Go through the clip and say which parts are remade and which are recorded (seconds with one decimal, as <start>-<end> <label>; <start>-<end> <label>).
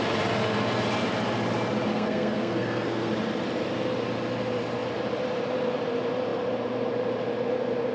0.0-1.9 recorded; 1.9-3.1 remade; 3.1-7.9 recorded